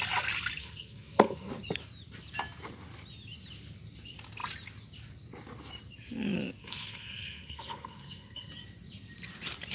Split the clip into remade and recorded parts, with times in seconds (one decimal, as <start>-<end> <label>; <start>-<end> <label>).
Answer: 0.0-0.6 recorded; 0.6-1.5 remade; 1.5-6.6 recorded; 6.6-8.5 remade; 8.5-9.7 recorded